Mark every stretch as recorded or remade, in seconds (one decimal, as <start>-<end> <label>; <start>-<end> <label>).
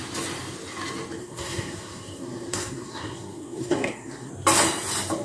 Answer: 0.0-1.2 recorded; 1.2-4.3 remade; 4.3-5.2 recorded